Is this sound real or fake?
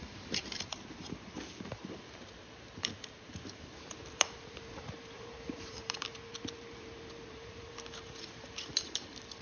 fake